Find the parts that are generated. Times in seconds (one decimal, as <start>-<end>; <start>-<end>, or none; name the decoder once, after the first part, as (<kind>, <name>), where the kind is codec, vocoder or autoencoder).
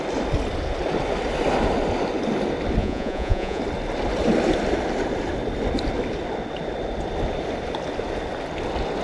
2.8-3.6 (vocoder, Vocos)